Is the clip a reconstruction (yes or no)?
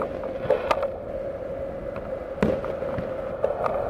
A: no